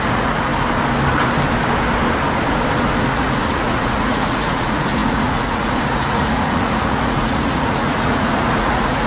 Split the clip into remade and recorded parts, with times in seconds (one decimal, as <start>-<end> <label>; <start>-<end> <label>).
0.0-0.5 remade; 0.5-3.0 recorded; 3.0-9.1 remade

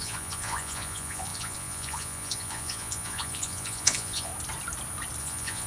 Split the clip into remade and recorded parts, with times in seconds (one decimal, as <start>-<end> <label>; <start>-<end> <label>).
0.0-4.3 remade; 4.3-5.2 recorded; 5.2-5.7 remade

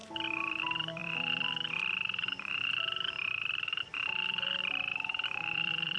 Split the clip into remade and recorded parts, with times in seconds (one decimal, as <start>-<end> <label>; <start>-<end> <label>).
0.0-6.0 remade

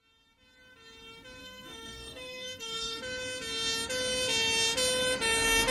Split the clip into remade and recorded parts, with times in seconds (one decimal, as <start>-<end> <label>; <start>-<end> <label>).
0.0-1.4 recorded; 1.4-3.0 remade; 3.0-5.7 recorded

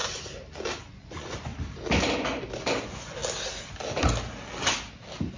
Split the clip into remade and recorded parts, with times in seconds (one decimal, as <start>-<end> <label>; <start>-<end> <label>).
0.0-0.8 recorded; 0.8-1.5 remade; 1.5-2.8 recorded; 2.8-3.2 remade; 3.2-5.4 recorded